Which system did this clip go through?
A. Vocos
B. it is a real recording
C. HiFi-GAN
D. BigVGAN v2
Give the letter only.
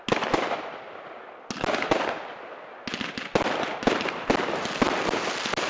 B